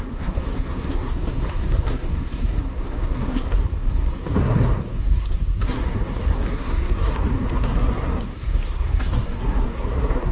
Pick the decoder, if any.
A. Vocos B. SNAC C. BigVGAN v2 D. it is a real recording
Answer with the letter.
B